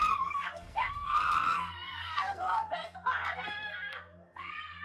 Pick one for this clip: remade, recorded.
remade